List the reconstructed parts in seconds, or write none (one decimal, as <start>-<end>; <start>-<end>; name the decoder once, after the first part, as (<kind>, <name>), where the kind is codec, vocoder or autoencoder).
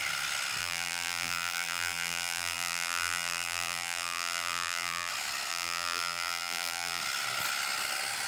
0.6-5.1 (vocoder, BigVGAN v2); 5.5-7.0